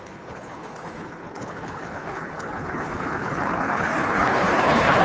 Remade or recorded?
remade